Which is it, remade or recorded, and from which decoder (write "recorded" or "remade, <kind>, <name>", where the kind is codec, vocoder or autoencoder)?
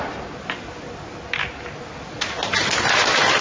recorded